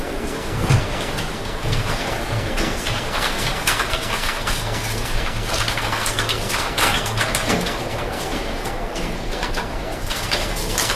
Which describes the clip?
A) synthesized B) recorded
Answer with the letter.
A